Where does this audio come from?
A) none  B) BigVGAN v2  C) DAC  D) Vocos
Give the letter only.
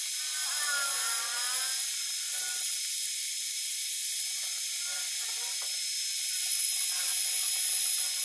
A